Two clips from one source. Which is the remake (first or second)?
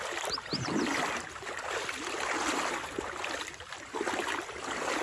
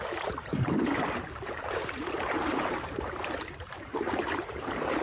second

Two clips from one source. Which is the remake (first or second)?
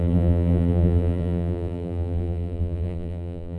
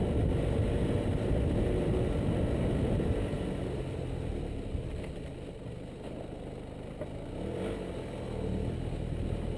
first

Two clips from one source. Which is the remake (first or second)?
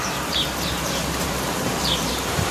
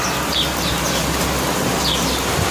first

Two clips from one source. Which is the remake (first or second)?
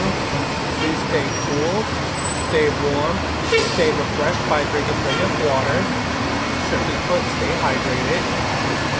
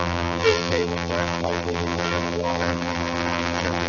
second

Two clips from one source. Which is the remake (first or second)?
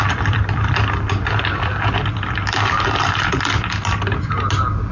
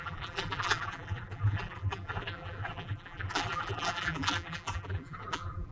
second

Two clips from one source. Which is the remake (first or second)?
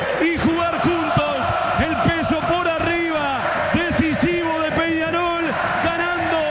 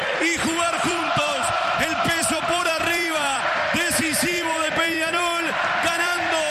second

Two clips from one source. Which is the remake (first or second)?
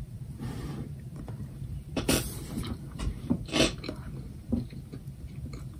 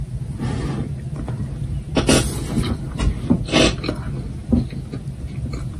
first